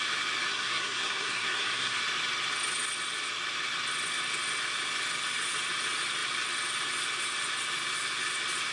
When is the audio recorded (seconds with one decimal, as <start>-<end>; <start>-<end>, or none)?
0.0-0.5; 2.0-8.7